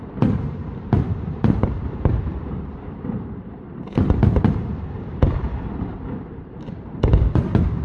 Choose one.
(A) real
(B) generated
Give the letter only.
B